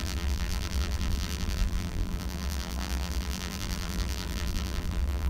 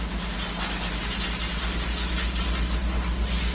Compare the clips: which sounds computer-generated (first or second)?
first